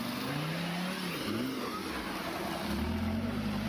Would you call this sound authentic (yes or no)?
yes